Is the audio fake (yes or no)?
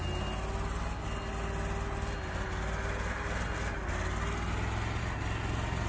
no